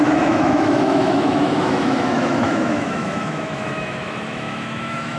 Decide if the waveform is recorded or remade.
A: remade